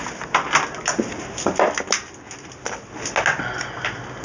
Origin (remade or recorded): recorded